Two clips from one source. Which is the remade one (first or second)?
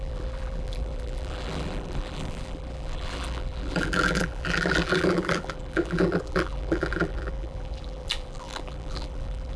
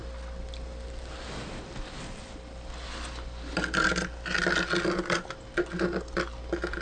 first